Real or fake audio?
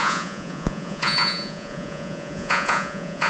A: fake